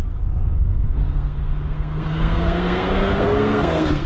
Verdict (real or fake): fake